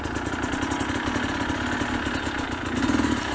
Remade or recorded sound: recorded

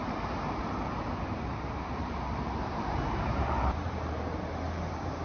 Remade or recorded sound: remade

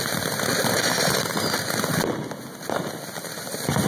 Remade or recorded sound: recorded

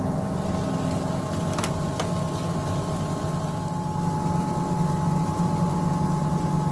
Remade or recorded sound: recorded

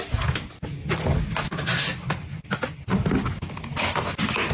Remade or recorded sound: recorded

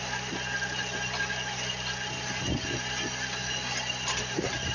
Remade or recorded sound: recorded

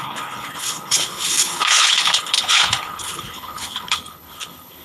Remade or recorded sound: remade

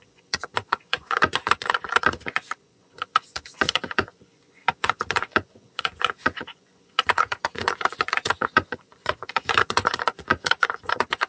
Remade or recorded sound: remade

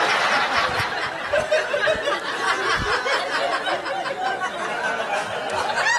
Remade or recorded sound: recorded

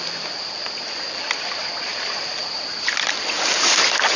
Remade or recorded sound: recorded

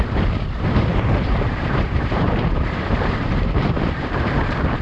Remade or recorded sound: remade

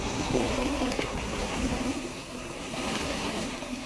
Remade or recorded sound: remade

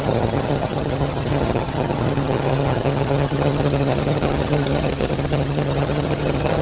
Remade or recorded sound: remade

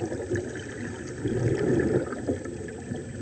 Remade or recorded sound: recorded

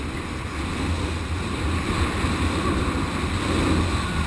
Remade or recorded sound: recorded